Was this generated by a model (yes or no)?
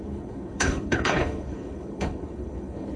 yes